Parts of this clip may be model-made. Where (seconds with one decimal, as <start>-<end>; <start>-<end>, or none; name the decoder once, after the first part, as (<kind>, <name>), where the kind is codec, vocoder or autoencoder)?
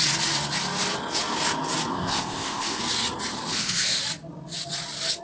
1.9-2.8 (codec, ZipCodec); 3.5-4.0